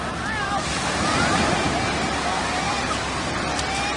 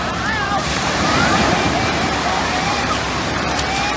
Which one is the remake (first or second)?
second